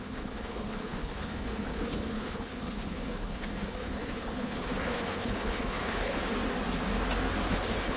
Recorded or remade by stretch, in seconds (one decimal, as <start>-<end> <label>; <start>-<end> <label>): 0.0-6.2 remade; 6.2-7.5 recorded; 7.5-8.0 remade